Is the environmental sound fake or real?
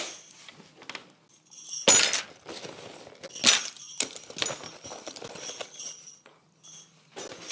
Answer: real